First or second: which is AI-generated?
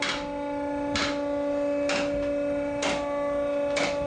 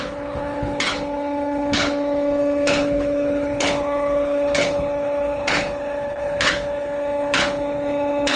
second